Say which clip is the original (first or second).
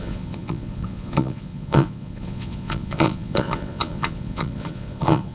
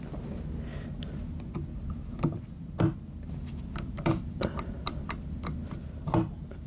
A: second